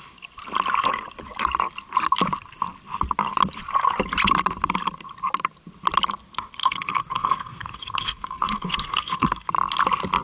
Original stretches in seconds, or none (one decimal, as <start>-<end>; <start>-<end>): 0.0-6.6; 9.5-10.2